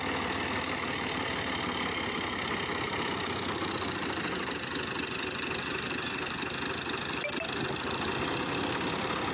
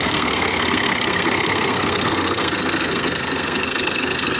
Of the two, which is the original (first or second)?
first